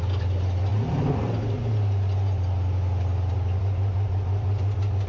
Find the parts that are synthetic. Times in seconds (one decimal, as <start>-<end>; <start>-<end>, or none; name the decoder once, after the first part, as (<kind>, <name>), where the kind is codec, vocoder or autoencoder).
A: none